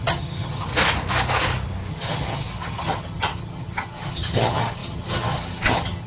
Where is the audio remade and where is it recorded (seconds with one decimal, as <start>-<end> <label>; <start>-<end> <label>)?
0.0-0.7 remade; 0.7-1.9 recorded; 1.9-6.1 remade